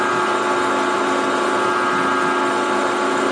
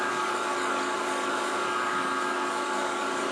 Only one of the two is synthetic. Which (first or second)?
second